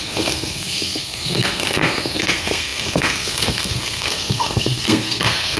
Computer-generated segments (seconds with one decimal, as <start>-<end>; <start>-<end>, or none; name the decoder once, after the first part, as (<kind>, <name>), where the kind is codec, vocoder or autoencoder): 0.0-5.6 (codec, SNAC)